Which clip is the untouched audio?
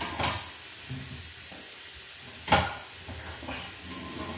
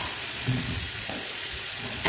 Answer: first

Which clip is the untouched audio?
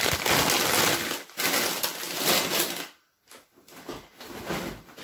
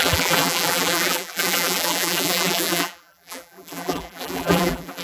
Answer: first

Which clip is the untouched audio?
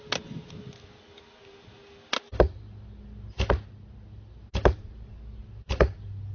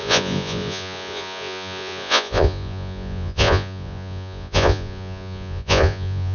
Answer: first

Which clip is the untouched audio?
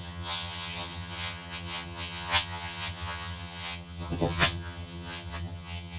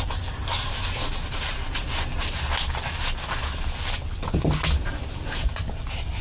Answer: second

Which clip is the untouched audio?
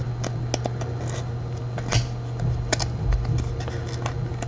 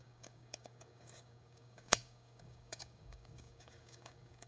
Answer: first